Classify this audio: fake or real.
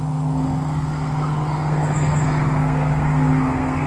fake